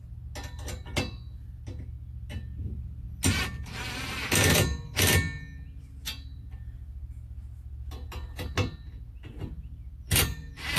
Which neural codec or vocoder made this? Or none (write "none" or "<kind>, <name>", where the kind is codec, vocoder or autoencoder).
none